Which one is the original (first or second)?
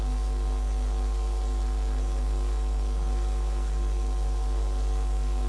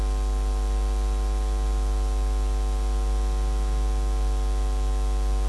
second